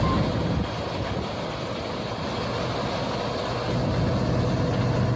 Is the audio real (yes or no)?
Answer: yes